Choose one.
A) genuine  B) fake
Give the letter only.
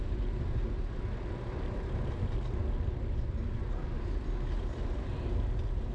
A